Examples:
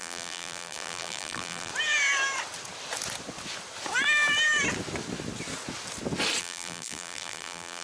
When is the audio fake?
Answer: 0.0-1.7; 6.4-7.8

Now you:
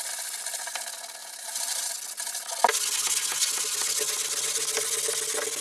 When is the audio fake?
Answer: 1.2-1.9

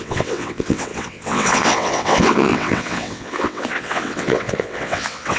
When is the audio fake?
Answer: 0.0-5.4

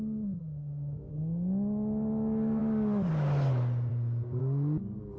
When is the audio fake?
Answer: 0.4-1.1